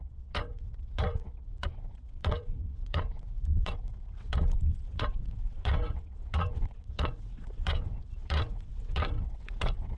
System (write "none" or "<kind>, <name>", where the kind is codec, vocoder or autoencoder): vocoder, WaveNeXt